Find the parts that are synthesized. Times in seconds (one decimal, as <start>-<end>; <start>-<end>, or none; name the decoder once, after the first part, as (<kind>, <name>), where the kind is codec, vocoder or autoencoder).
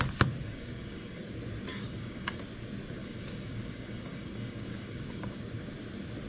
0.4-1.2 (codec, DAC); 1.7-2.4; 3.0-5.4